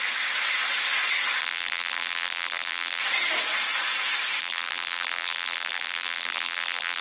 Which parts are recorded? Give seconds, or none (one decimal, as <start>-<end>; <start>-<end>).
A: 0.0-1.4; 3.0-4.4